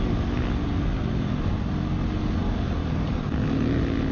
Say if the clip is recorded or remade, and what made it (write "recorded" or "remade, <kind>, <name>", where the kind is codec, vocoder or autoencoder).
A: recorded